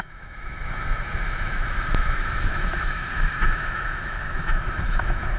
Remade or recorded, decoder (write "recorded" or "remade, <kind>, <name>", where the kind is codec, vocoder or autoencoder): remade, autoencoder, DAC-VAE